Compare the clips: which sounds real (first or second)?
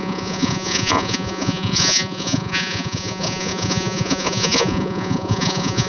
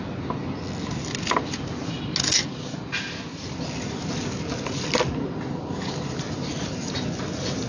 second